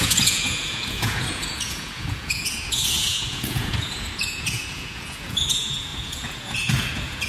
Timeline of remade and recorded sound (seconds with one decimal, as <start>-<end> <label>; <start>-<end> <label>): 0.0-7.3 remade